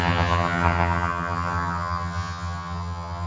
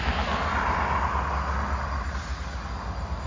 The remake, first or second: first